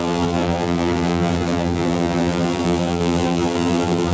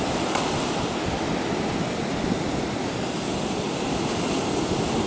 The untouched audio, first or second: second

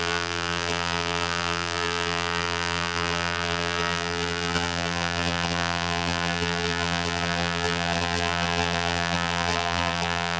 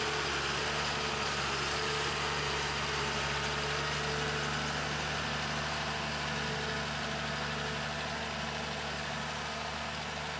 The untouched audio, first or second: second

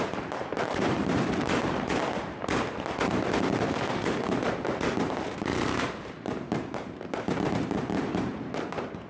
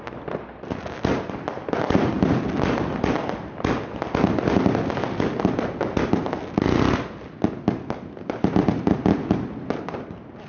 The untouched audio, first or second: second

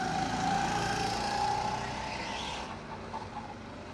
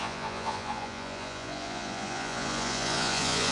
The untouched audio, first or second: first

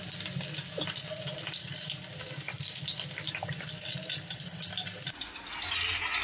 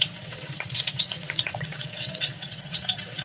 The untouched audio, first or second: first